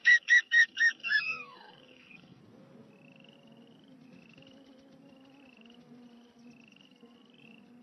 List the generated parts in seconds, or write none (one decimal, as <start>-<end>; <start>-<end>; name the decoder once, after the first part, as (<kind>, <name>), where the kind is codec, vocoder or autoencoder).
0.0-2.4 (codec, SNAC)